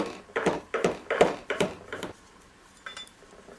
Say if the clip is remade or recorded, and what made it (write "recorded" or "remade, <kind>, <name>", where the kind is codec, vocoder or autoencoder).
recorded